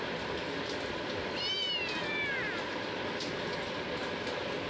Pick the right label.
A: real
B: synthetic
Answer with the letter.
A